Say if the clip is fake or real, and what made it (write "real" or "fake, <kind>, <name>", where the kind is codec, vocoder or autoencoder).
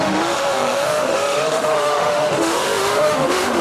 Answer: fake, autoencoder, DAC-VAE